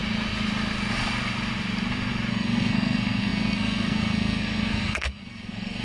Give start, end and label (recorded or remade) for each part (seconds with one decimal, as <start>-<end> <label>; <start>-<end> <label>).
0.0-2.3 recorded; 2.3-5.8 remade